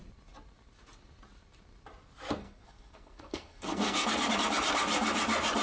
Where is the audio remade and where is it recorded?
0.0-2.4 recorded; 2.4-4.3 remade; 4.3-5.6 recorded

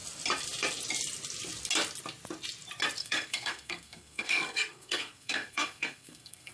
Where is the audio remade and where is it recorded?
0.0-3.0 recorded; 3.0-6.5 remade

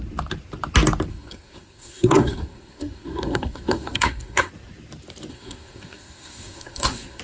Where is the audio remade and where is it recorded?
0.0-1.1 recorded; 1.1-4.5 remade; 4.5-5.3 recorded; 5.3-7.2 remade

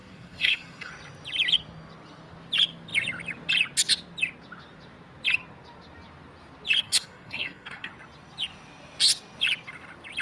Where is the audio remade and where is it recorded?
0.0-0.9 remade; 0.9-6.8 recorded; 6.8-7.9 remade; 7.9-10.2 recorded

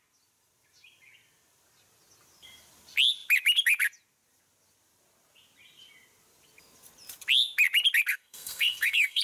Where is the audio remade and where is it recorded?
0.0-8.1 recorded; 8.1-9.2 remade

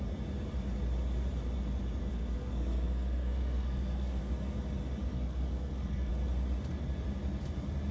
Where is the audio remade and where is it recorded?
0.0-2.1 recorded; 2.1-4.2 remade; 4.2-5.1 recorded; 5.1-6.1 remade; 6.1-7.9 recorded